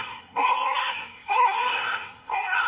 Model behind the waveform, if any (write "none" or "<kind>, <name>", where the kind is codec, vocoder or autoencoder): codec, SNAC